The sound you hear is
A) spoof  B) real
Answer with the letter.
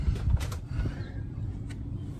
A